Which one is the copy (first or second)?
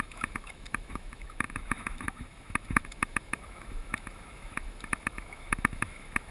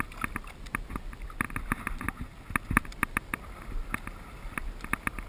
first